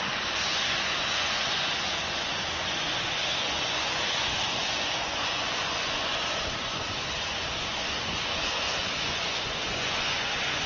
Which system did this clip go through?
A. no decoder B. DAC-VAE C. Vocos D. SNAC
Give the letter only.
C